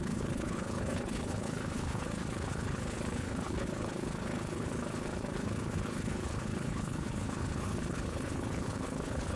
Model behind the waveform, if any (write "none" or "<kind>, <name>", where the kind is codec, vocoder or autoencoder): codec, HILCodec